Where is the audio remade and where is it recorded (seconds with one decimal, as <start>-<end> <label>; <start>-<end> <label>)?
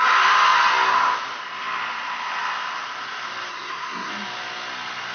0.0-3.5 recorded; 3.5-4.1 remade; 4.1-5.1 recorded